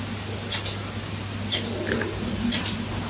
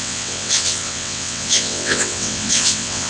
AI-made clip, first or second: second